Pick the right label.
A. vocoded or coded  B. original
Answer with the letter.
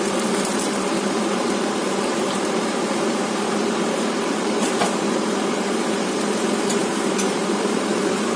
A